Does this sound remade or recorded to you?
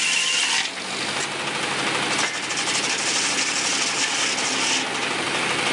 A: recorded